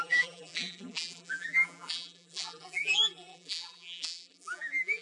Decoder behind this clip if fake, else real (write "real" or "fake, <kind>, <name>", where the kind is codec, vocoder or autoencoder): fake, vocoder, BigVGAN v2